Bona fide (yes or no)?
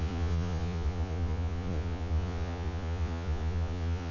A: no